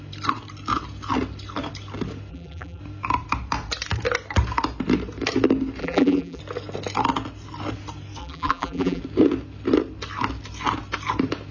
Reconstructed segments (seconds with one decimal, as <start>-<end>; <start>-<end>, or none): 2.3-2.8; 5.8-6.4; 8.2-9.0

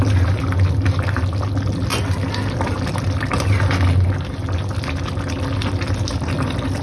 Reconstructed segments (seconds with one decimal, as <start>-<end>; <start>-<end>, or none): none

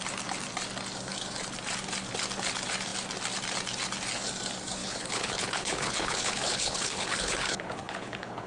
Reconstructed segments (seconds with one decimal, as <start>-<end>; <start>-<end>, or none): 4.8-8.5

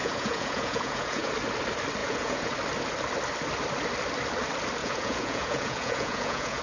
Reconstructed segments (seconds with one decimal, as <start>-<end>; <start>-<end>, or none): 0.0-1.3; 2.0-2.5; 4.8-6.6

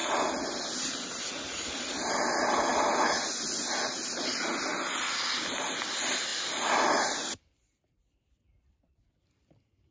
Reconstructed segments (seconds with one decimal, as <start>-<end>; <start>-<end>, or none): 6.3-9.9

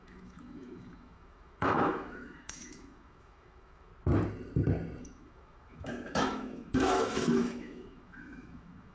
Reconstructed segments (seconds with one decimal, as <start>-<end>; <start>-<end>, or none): 0.0-3.9; 5.0-8.9